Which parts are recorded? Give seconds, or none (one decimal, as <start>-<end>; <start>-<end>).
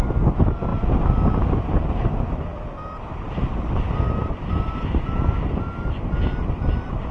0.0-7.1